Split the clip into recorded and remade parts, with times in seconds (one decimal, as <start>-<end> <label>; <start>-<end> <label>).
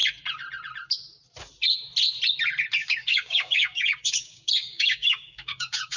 0.0-2.8 recorded; 2.8-6.0 remade